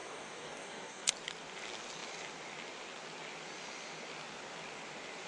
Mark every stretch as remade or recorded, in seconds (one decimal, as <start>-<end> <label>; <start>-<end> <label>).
0.0-1.1 remade; 1.1-5.3 recorded